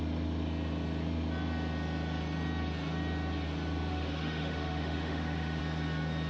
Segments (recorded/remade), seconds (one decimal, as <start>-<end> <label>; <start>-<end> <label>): 0.0-3.9 recorded; 3.9-5.6 remade; 5.6-6.3 recorded